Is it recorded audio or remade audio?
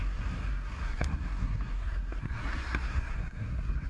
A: remade